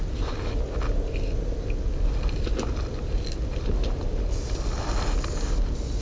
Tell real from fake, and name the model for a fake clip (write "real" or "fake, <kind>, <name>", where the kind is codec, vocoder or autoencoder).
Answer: real